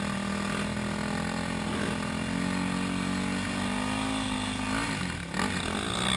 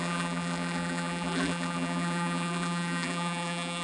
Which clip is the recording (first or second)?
first